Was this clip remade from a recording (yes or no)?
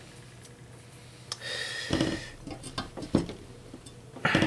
no